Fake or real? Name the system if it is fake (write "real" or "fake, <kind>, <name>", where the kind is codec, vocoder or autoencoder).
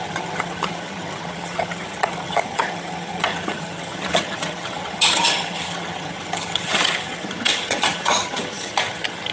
fake, vocoder, HiFi-GAN